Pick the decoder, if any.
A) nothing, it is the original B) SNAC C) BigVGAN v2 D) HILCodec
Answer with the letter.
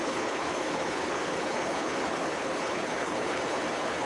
D